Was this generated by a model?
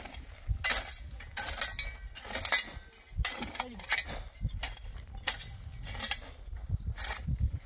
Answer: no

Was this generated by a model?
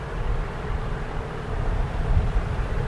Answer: yes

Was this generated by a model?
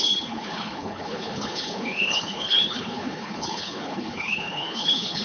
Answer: yes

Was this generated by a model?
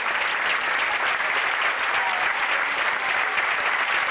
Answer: no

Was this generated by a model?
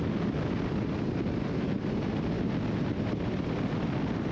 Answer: no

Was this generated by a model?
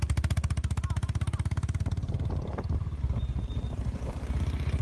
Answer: no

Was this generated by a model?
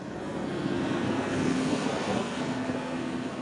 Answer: yes